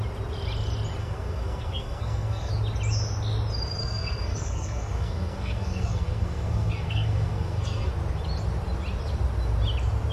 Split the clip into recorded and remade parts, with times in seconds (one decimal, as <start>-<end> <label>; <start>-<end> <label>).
0.0-1.0 recorded; 1.0-2.5 remade; 2.5-3.8 recorded; 3.8-7.9 remade; 7.9-10.1 recorded